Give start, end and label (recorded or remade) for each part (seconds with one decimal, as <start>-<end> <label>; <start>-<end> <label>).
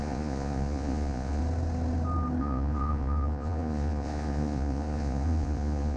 0.0-1.4 remade; 1.4-2.4 recorded; 2.4-6.0 remade